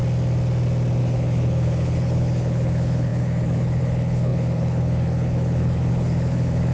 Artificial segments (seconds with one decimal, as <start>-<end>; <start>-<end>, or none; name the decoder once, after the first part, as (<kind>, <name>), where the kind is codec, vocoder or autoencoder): 1.0-6.7 (codec, HILCodec)